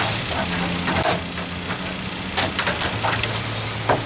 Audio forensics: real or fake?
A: real